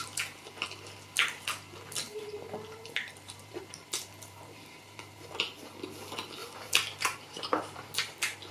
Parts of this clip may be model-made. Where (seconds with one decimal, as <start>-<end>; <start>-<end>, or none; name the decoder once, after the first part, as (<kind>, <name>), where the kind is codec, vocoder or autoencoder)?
2.1-5.3 (vocoder, BigVGAN v2); 6.4-8.5